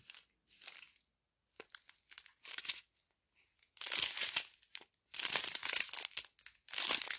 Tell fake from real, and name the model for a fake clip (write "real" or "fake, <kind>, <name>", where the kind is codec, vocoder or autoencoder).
real